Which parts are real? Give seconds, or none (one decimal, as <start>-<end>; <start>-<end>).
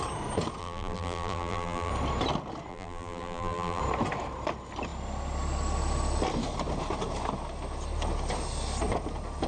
0.0-0.6; 1.9-2.7; 3.8-9.5